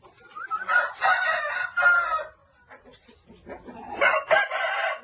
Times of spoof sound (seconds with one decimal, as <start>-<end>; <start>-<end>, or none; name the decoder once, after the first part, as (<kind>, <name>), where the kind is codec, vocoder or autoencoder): none